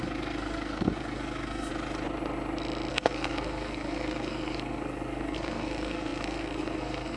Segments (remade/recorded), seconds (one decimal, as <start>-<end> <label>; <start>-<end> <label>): 0.0-1.7 remade; 1.7-2.9 recorded; 2.9-7.2 remade